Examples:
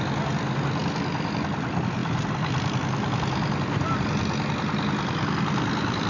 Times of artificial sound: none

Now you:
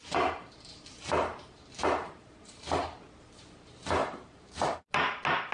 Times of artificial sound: 2.0-2.8 (vocoder, BigVGAN v2); 4.0-4.8

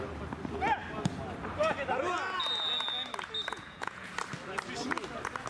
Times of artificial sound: 3.5-4.1 (vocoder, Vocos)